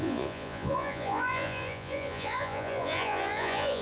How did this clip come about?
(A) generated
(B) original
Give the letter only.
A